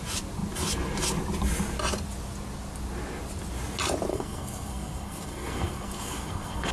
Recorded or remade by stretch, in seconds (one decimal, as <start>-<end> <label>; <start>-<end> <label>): 0.0-4.1 recorded; 4.1-6.7 remade